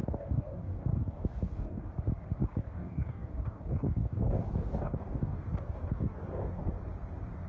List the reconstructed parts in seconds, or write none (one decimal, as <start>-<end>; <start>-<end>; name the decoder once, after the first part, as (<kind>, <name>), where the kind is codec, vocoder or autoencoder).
0.0-1.9 (codec, DAC); 2.4-6.7